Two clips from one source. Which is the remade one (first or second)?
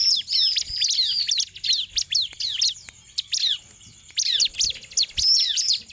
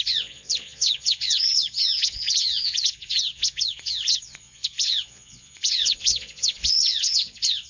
second